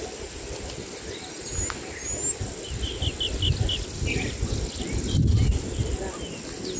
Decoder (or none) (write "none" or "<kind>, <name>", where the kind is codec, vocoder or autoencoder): none